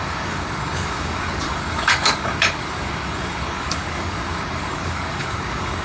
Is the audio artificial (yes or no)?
yes